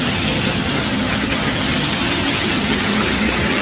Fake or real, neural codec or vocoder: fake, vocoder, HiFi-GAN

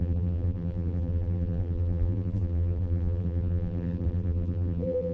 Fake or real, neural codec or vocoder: fake, vocoder, BigVGAN v2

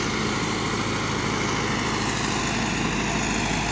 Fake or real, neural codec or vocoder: real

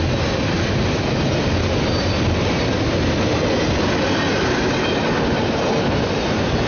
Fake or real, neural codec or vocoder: real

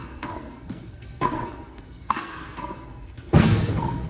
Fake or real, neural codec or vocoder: fake, codec, SNAC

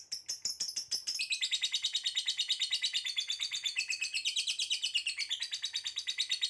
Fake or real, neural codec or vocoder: real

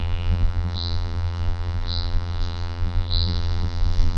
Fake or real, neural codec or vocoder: fake, vocoder, BigVGAN v2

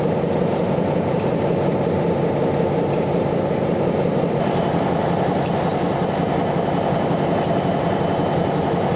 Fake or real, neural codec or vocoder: fake, vocoder, BigVGAN v2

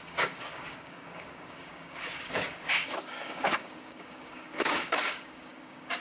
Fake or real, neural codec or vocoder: fake, codec, DAC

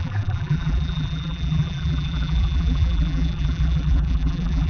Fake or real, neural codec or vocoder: fake, vocoder, BigVGAN v2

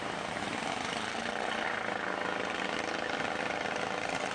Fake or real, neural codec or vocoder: real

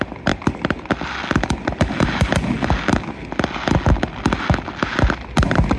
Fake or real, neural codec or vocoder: real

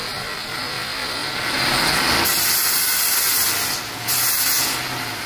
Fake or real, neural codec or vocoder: real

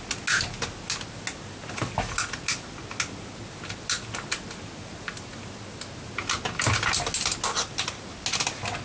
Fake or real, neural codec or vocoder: real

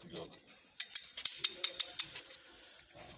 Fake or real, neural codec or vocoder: fake, vocoder, Vocos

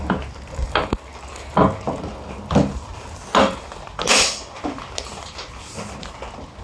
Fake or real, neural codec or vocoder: real